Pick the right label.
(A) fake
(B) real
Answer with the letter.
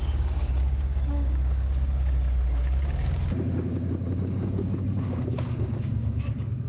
A